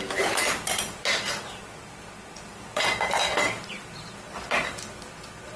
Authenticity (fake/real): real